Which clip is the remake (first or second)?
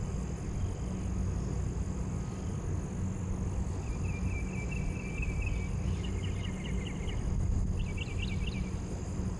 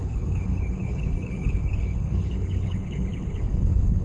second